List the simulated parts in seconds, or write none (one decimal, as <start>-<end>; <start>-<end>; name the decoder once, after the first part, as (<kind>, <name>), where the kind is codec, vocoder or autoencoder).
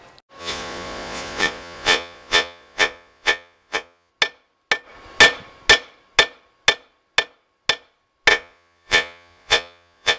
0.4-4.1 (vocoder, Vocos); 8.3-10.2